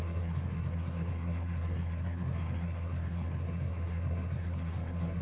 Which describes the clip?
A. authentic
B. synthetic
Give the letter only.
B